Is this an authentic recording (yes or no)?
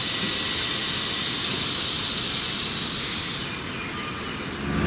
yes